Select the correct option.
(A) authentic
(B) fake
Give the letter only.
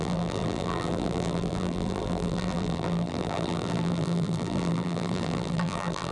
B